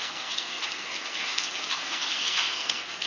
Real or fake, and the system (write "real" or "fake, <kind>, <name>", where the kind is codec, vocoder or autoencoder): fake, codec, SNAC